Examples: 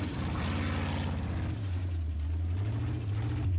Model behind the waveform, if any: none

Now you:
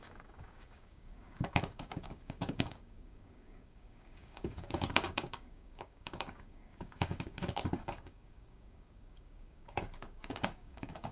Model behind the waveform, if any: codec, DAC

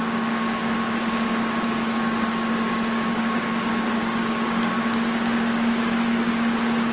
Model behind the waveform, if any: codec, DAC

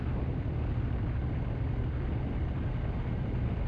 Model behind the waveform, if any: none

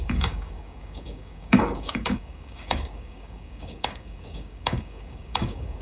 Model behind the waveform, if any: codec, DAC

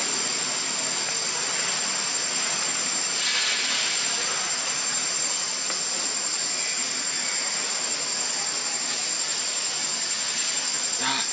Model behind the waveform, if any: none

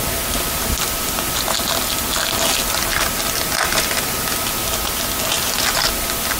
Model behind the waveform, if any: none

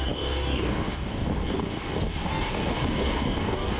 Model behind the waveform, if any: codec, DAC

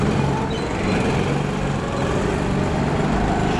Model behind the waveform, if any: none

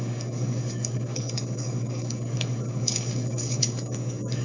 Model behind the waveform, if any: codec, DAC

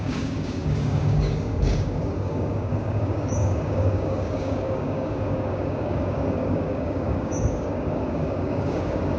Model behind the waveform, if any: codec, DAC